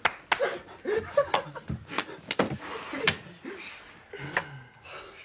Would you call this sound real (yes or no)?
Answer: yes